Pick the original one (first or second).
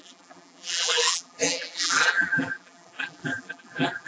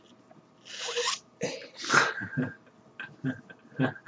second